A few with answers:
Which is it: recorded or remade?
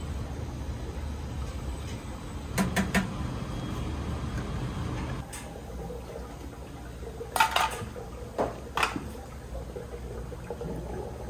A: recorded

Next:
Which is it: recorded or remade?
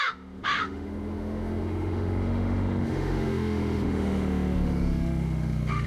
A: remade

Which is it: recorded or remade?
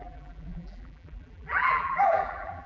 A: remade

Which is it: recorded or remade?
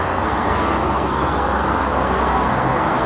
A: remade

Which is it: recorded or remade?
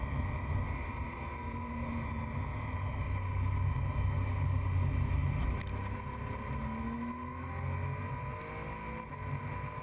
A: recorded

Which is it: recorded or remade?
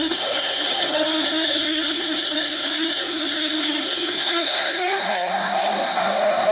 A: remade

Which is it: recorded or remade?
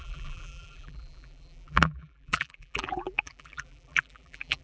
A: remade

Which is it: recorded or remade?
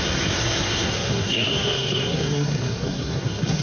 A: remade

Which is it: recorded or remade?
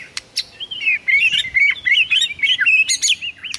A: recorded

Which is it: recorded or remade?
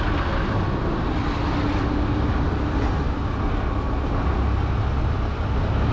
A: recorded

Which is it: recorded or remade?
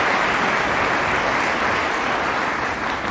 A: recorded